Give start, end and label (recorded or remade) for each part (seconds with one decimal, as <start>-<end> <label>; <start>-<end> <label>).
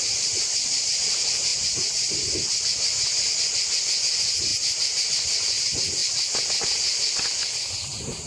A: 0.0-8.3 recorded